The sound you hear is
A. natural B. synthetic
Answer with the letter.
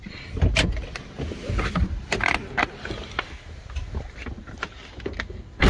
A